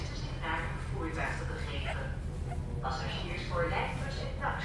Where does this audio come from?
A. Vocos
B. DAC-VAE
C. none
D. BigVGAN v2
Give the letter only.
C